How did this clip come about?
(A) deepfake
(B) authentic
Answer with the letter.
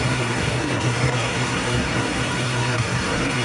A